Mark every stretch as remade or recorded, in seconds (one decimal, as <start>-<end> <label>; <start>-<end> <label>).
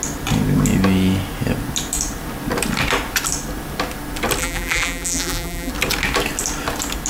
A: 0.0-4.4 recorded; 4.4-5.7 remade; 5.7-7.1 recorded